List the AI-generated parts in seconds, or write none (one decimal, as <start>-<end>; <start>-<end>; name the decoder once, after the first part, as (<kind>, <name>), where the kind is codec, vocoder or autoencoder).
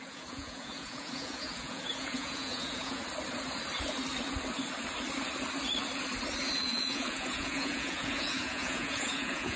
0.0-3.0 (vocoder, Vocos); 6.6-9.6